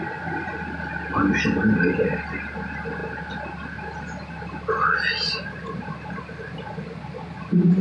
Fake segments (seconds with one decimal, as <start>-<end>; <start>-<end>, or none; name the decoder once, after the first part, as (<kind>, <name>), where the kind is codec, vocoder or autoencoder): none